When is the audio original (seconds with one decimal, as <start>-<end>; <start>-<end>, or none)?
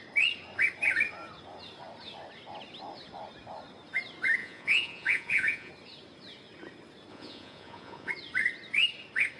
0.0-4.4; 5.7-7.1; 8.1-9.4